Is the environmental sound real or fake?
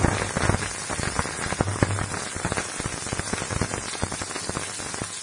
real